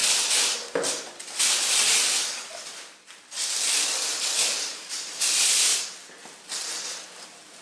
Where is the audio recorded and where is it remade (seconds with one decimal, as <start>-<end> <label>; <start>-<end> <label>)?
0.0-2.5 remade; 2.5-4.7 recorded; 4.7-5.7 remade; 5.7-7.6 recorded